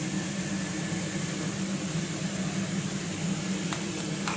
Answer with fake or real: real